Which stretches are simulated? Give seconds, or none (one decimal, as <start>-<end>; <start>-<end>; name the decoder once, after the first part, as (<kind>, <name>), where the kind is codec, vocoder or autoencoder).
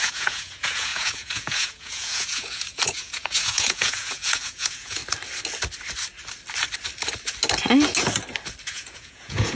0.0-5.0 (vocoder, Vocos); 8.7-9.5